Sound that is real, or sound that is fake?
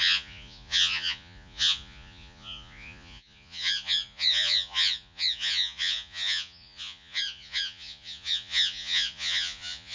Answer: fake